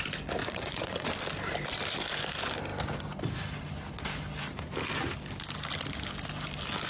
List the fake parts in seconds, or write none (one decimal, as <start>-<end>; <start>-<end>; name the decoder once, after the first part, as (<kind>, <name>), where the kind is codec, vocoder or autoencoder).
0.4-1.1 (vocoder, Vocos)